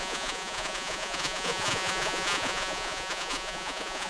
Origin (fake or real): fake